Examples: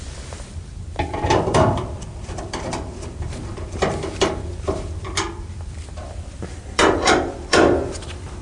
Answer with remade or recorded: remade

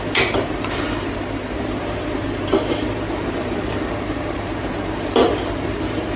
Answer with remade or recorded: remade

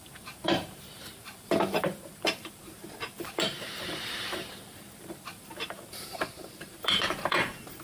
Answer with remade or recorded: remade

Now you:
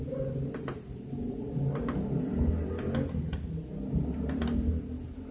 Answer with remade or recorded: recorded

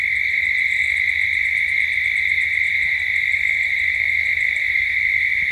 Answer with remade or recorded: remade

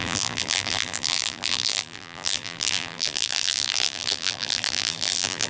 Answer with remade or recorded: remade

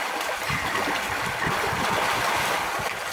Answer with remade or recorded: recorded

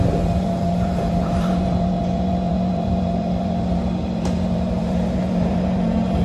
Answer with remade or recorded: remade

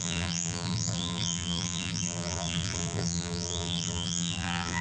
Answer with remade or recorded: remade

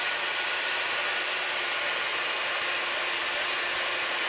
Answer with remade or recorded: recorded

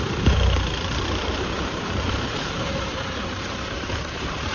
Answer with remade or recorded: remade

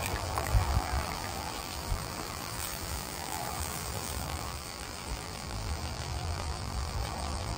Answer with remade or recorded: remade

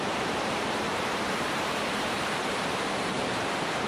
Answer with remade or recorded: remade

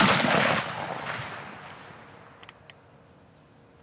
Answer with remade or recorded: recorded